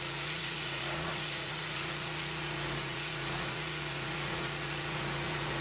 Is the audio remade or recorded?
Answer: remade